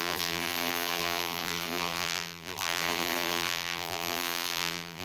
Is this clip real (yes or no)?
no